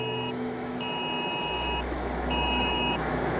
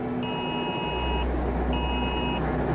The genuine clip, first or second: second